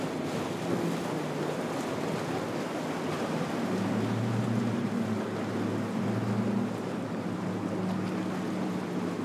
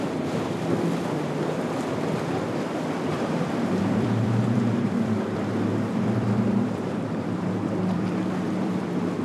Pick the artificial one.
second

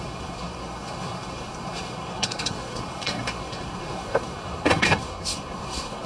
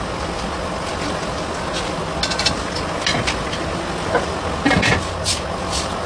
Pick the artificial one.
first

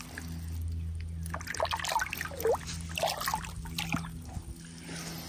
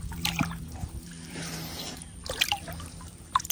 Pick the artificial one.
second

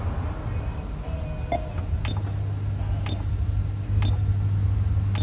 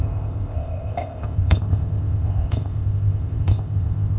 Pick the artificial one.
second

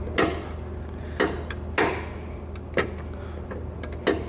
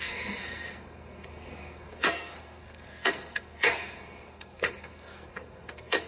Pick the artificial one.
second